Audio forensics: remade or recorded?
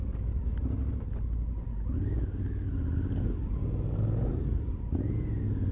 recorded